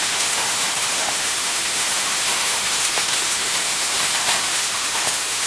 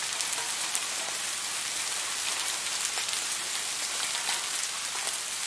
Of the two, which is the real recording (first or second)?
second